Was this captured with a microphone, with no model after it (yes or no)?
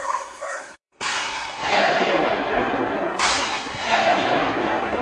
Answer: no